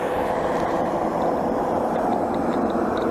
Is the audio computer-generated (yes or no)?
yes